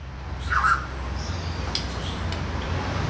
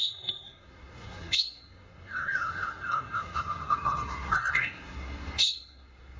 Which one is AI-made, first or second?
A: second